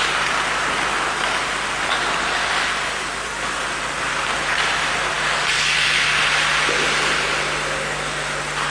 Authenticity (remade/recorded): recorded